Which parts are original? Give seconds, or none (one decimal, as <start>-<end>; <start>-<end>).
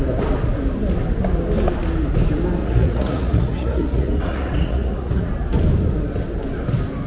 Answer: 0.0-2.6; 5.3-7.1